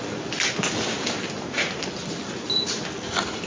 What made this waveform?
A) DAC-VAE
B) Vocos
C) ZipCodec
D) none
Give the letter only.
D